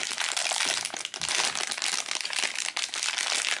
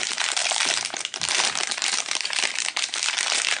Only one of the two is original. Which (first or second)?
first